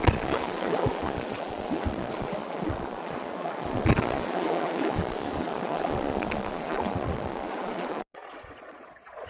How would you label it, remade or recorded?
remade